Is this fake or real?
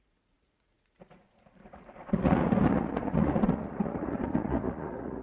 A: fake